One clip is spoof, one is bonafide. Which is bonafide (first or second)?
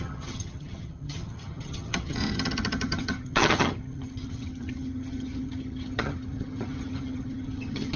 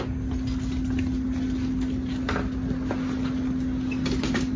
second